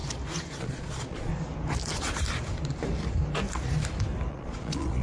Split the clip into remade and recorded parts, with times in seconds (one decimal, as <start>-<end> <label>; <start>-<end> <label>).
0.0-0.6 recorded; 0.6-1.3 remade; 1.3-4.3 recorded; 4.3-5.0 remade